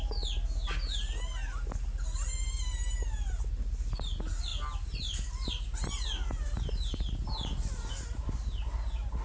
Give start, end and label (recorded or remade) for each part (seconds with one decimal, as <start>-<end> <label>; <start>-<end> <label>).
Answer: 0.0-9.2 recorded